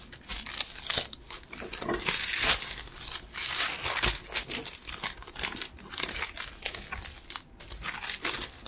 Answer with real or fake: real